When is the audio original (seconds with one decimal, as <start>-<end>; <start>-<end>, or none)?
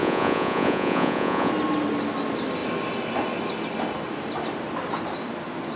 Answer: 1.5-5.8